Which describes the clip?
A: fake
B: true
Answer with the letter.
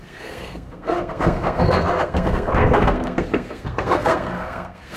A